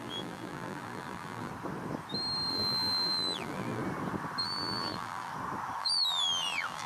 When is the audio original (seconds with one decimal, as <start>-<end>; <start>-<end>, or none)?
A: 1.5-2.5; 3.8-4.4; 5.3-5.8